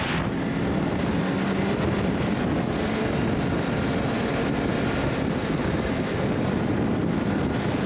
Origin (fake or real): real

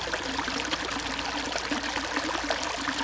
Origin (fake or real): real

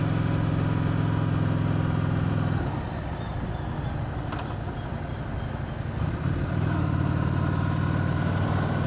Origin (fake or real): real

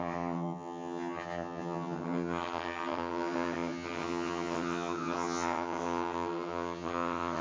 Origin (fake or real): fake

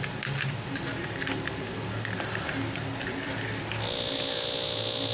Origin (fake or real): real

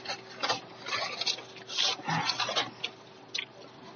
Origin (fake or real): real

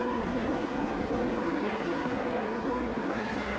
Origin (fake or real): fake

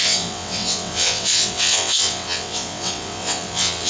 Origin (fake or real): fake